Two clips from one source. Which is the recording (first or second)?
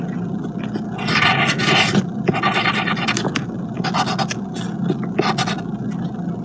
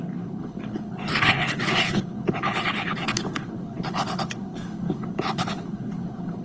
first